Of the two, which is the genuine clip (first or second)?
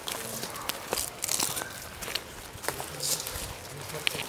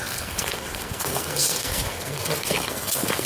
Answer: first